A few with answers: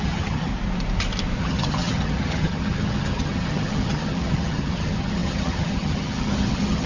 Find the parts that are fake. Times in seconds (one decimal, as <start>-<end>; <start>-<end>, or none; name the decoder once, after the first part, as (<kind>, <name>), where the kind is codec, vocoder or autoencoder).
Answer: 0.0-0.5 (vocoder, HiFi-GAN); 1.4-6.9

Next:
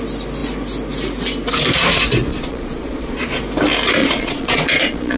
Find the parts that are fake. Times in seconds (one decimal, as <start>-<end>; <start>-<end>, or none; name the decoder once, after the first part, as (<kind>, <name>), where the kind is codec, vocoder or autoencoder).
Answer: 2.3-3.4 (vocoder, Vocos); 4.0-5.2

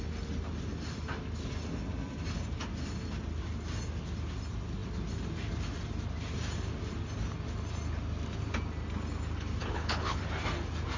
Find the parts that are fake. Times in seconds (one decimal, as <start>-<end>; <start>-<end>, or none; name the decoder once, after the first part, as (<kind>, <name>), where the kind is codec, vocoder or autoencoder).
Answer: 9.6-10.2 (codec, HILCodec)

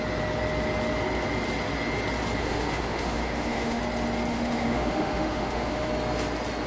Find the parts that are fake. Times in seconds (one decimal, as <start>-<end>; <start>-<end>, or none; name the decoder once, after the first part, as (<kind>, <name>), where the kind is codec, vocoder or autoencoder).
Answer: 2.4-3.8 (autoencoder, DAC-VAE); 4.3-5.9

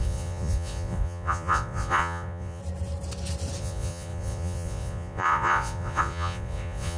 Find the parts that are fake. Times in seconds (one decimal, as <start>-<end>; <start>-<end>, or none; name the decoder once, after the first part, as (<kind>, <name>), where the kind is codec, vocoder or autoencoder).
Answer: 0.0-2.6 (vocoder, Vocos); 3.6-7.0